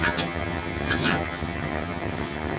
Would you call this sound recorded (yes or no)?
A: no